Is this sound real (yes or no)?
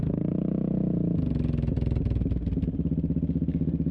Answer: yes